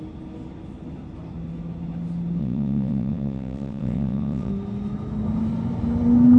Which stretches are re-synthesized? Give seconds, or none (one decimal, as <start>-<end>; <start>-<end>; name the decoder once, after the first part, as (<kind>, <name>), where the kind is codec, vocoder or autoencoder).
2.4-4.5 (vocoder, WaveNeXt)

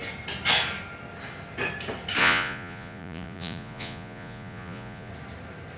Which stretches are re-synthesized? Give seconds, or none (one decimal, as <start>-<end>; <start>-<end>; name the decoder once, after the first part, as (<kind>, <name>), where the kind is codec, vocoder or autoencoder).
2.2-5.1 (vocoder, Vocos)

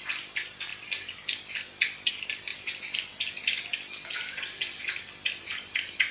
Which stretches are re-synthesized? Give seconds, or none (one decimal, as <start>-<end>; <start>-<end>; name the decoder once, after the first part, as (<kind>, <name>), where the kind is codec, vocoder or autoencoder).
none

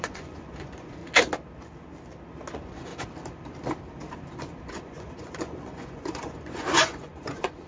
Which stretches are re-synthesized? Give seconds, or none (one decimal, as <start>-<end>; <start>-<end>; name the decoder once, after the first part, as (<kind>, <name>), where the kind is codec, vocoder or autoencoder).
0.0-1.0 (vocoder, Vocos); 2.5-2.9; 4.7-7.7